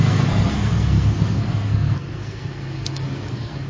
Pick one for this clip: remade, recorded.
remade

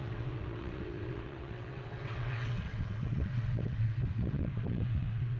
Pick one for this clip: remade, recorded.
remade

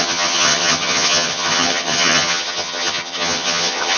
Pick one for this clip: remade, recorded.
remade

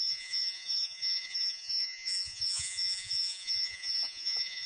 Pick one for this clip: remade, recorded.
remade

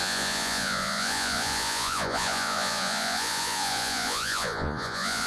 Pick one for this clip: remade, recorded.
remade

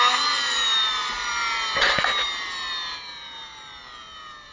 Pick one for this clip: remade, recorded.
recorded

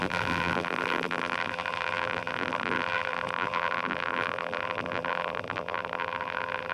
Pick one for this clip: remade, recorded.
remade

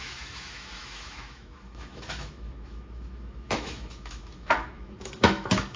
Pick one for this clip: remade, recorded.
remade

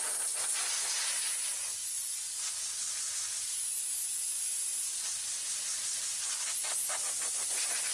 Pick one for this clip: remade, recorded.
recorded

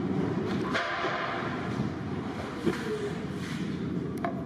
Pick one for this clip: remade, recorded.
remade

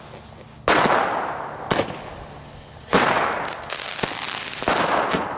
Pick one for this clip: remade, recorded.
recorded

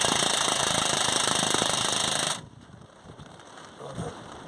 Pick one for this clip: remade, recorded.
remade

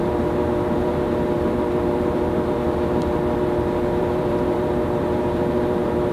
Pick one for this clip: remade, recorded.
remade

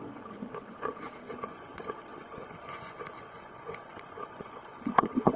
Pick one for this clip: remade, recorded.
remade